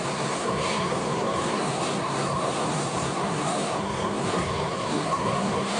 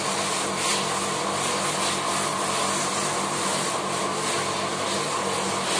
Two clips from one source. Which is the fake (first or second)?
first